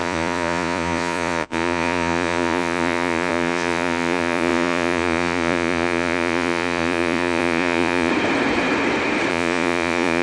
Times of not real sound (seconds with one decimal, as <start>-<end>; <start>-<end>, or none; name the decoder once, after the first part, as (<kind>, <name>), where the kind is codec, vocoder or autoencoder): 0.0-8.1 (vocoder, Vocos); 9.3-10.2